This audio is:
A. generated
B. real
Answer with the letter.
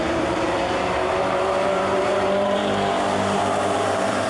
A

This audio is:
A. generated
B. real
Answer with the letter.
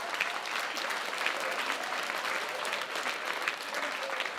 A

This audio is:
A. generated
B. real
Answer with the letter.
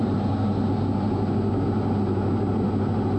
B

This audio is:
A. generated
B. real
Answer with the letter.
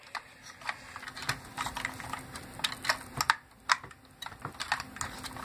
B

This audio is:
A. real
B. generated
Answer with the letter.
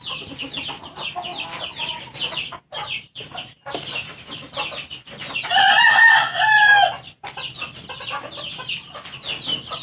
A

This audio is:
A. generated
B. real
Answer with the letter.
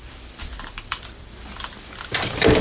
A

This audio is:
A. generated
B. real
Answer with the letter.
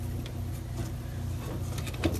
B